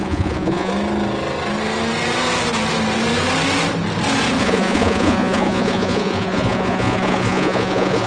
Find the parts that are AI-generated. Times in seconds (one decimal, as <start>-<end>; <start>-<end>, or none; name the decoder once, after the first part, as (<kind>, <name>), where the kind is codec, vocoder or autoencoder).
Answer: 0.0-0.7 (vocoder, Vocos); 4.4-8.1